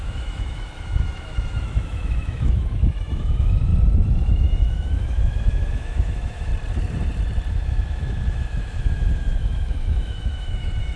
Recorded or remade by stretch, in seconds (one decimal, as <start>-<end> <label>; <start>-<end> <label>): 0.0-3.7 remade; 3.7-4.3 recorded; 4.3-6.5 remade; 6.5-7.5 recorded; 7.5-11.0 remade